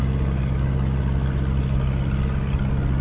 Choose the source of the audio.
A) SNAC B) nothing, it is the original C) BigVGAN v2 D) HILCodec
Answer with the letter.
B